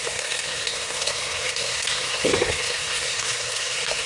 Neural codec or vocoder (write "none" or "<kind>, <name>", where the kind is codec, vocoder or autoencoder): codec, SNAC